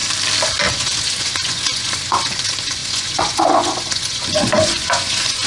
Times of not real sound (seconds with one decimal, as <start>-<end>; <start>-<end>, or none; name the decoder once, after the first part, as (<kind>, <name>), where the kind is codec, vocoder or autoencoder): 0.7-5.5 (vocoder, Vocos)